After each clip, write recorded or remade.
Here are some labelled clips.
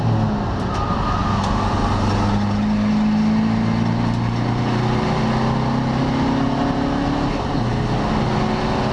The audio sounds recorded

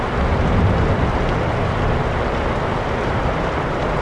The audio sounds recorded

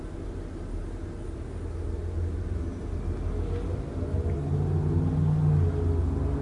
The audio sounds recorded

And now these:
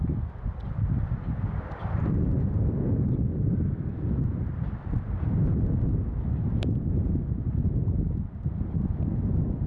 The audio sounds recorded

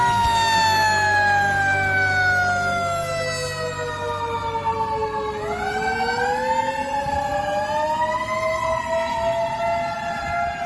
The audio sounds recorded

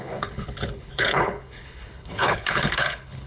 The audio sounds remade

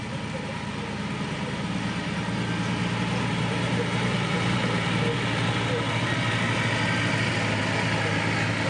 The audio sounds recorded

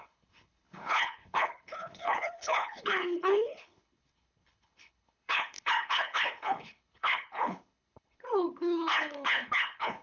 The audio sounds remade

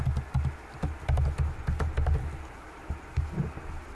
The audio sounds recorded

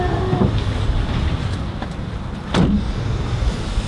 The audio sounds recorded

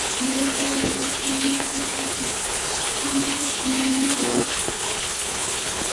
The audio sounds remade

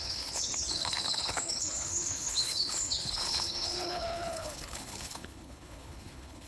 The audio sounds remade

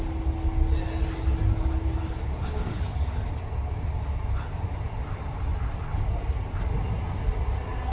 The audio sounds recorded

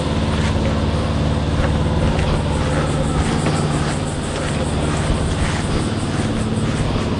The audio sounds recorded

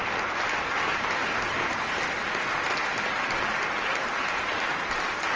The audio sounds recorded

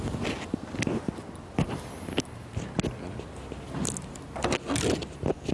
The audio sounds recorded